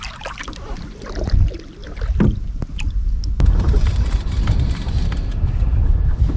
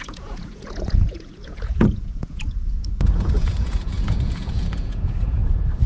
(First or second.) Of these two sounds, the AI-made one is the second